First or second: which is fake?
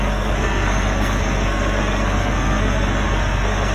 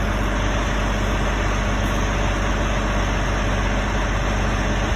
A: first